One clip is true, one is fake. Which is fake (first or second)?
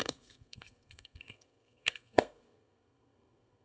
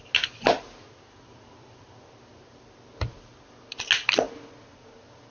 first